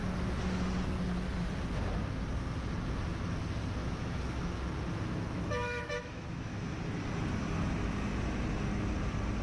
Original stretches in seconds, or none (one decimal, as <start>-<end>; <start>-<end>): 0.0-3.8; 4.4-4.9; 6.8-9.4